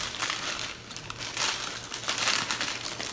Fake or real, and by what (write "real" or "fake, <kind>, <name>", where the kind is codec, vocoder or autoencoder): real